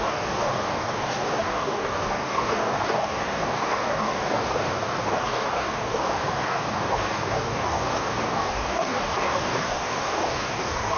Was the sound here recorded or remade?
remade